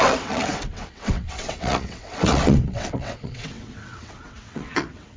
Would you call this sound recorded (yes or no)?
no